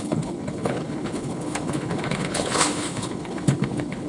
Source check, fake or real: fake